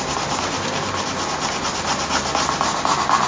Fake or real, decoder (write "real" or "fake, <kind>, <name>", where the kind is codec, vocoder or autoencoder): real